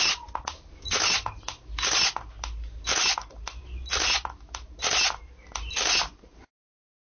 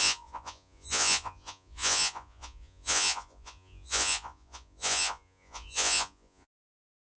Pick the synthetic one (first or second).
second